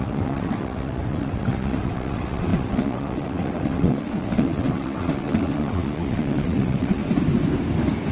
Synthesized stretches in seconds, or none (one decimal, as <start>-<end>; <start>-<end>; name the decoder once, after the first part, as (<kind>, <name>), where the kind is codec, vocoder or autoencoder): 0.0-7.0 (vocoder, WaveNeXt)